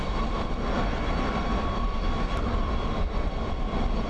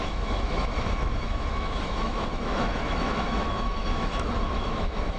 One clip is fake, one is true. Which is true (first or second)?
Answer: first